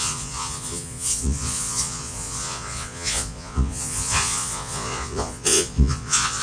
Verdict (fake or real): fake